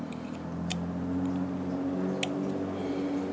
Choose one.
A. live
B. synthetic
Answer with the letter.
A